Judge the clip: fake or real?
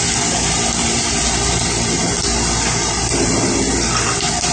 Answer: real